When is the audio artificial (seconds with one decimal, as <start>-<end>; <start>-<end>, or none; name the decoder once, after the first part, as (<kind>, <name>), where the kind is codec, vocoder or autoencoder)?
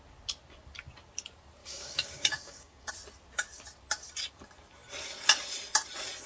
1.6-2.9 (codec, DAC)